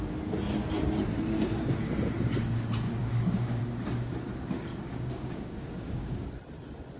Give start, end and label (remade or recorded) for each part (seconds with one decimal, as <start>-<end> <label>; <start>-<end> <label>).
0.0-3.0 recorded; 3.0-3.6 remade; 3.6-4.7 recorded; 4.7-6.3 remade; 6.3-7.0 recorded